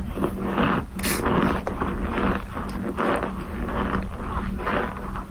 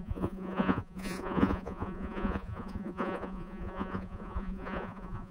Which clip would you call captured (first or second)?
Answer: first